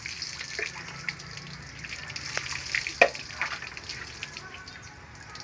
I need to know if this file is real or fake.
real